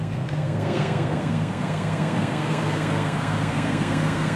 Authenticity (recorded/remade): remade